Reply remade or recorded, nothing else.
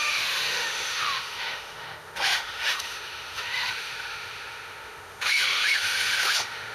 remade